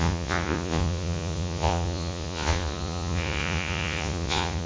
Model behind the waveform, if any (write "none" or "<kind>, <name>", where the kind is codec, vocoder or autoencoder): vocoder, Vocos